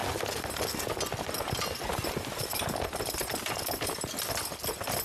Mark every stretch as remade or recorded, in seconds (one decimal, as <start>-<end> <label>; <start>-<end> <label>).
0.0-5.0 recorded